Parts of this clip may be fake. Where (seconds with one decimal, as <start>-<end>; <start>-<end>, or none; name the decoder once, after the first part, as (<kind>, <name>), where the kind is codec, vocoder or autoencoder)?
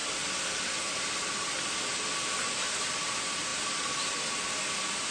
3.5-4.0 (vocoder, BigVGAN v2)